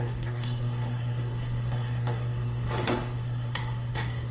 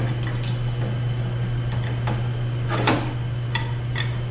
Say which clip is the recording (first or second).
second